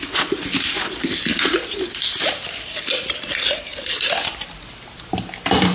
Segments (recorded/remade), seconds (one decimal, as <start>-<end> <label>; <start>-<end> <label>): 0.0-3.7 recorded; 3.7-5.2 remade; 5.2-5.7 recorded